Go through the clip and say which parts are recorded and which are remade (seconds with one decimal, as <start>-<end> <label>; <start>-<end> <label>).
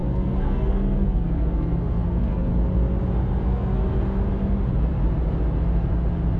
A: 0.0-2.5 remade; 2.5-3.4 recorded; 3.4-3.8 remade; 3.8-6.4 recorded